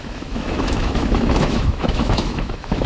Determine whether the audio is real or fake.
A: fake